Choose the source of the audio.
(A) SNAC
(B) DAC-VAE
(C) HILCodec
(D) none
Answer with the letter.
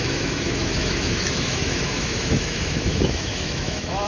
B